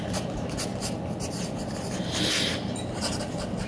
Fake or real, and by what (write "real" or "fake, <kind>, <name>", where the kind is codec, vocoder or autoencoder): real